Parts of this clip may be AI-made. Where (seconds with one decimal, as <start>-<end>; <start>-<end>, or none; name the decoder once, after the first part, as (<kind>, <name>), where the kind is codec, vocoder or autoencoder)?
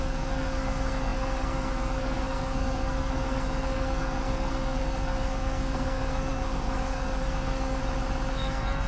0.0-7.8 (codec, SNAC); 8.3-8.9